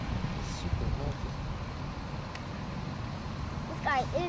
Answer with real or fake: real